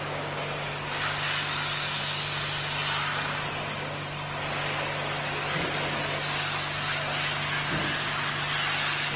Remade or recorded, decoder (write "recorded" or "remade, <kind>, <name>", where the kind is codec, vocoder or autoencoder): recorded